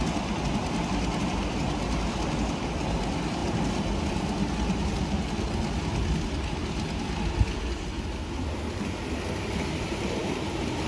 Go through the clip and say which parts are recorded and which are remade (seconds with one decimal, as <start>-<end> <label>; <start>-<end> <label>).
0.0-10.9 recorded